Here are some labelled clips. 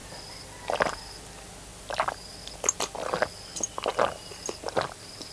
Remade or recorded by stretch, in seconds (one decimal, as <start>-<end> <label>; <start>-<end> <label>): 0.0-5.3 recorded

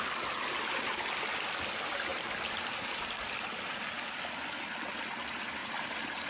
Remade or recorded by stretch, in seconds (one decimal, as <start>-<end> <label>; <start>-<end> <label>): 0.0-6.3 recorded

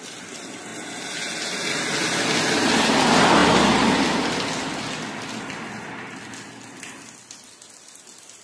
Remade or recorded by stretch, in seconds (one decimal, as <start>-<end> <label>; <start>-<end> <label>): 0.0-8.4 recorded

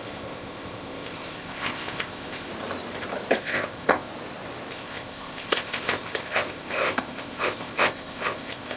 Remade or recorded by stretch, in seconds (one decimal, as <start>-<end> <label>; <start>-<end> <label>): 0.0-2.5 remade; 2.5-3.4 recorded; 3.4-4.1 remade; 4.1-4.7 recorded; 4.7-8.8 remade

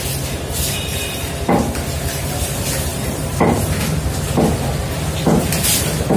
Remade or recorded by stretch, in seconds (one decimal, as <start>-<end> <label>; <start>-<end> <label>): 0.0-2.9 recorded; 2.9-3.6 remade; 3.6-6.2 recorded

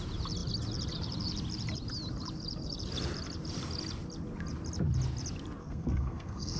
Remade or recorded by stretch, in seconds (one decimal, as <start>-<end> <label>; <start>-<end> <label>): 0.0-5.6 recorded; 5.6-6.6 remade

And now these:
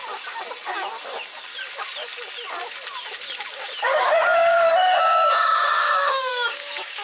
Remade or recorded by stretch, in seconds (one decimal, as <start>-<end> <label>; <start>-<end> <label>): 0.0-3.8 recorded; 3.8-4.7 remade; 4.7-5.3 recorded; 5.3-7.0 remade

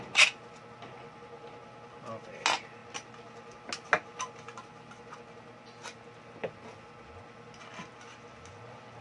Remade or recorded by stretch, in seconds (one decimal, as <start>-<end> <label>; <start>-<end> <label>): 0.0-9.0 recorded